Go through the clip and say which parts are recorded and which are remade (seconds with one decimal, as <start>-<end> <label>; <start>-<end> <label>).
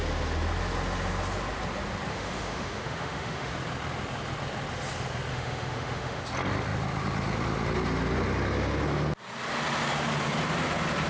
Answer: 0.0-2.1 recorded; 2.1-3.5 remade; 3.5-5.3 recorded; 5.3-6.2 remade; 6.2-11.1 recorded